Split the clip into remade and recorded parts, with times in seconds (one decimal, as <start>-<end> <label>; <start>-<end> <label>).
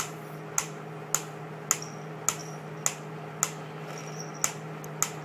0.0-5.2 recorded